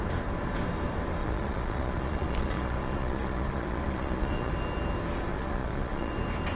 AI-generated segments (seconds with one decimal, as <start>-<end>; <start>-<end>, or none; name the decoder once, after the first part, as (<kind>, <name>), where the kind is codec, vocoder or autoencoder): 1.2-4.5 (vocoder, Vocos); 5.3-6.1